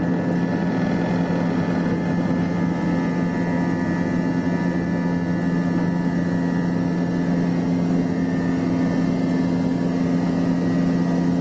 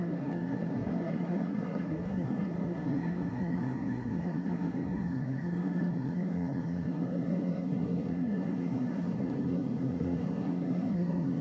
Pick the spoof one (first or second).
second